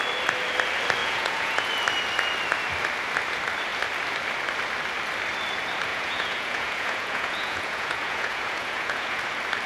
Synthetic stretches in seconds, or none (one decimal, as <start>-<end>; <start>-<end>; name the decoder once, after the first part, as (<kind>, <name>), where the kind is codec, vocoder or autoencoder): 1.0-1.7 (vocoder, Vocos); 5.9-9.2

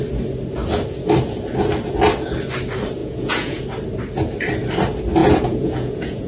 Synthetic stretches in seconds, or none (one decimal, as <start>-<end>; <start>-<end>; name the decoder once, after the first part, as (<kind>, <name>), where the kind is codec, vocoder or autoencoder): 3.0-3.6 (vocoder, Vocos); 5.2-6.3

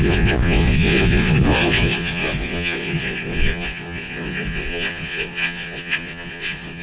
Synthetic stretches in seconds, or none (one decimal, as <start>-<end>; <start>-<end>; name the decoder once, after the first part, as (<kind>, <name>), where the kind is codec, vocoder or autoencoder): 0.0-6.8 (vocoder, Vocos)

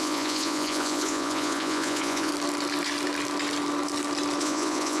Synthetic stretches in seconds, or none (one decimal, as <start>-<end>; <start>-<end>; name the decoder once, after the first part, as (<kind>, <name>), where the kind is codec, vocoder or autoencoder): 0.0-2.3 (vocoder, Vocos); 4.4-5.0

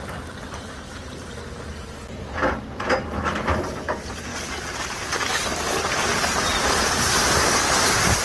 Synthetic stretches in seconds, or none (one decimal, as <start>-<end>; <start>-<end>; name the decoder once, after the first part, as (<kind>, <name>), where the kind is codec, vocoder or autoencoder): none

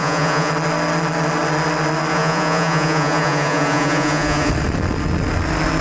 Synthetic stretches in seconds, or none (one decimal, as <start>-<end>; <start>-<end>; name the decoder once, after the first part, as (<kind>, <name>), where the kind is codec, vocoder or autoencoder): 0.0-0.5 (vocoder, Vocos); 2.1-4.5